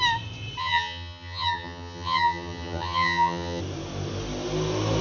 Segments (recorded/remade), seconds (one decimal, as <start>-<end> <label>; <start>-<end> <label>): 0.0-0.6 recorded; 0.6-3.6 remade; 3.6-5.0 recorded